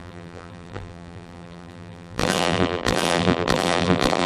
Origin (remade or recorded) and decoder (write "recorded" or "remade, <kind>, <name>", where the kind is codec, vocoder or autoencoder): remade, vocoder, BigVGAN v2